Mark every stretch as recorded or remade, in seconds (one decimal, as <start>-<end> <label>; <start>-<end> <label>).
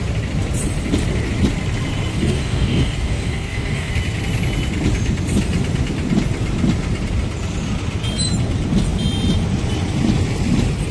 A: 0.0-2.1 recorded; 2.1-3.9 remade; 3.9-10.9 recorded